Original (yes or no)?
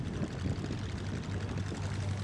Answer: yes